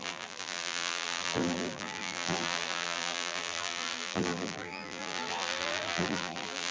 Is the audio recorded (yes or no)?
no